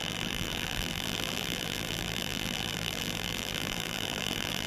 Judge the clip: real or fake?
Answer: fake